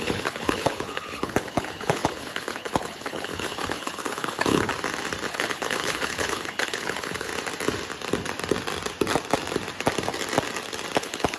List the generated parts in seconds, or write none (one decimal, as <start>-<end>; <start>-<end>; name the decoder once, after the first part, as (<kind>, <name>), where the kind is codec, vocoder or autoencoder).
0.0-4.7 (codec, HILCodec); 5.3-7.3; 11.0-11.4